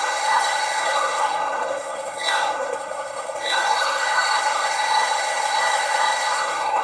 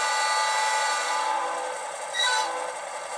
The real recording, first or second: second